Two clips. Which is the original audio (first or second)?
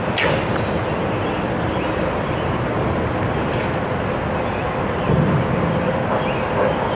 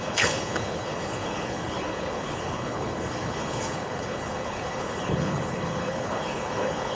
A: first